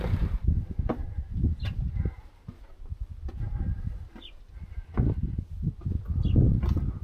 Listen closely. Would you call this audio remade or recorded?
remade